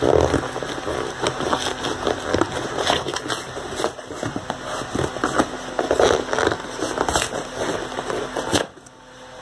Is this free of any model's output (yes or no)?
yes